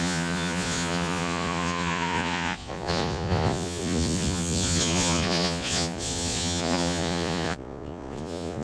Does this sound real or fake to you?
fake